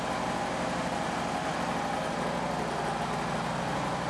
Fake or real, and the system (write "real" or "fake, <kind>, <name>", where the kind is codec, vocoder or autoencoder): real